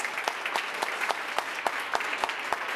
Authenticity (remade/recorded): recorded